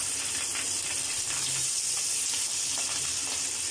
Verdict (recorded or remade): recorded